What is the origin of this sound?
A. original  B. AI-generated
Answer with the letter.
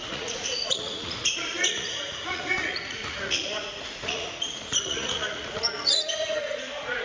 B